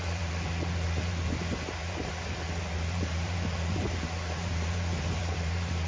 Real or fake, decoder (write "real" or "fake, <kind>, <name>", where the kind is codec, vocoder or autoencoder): fake, vocoder, BigVGAN v2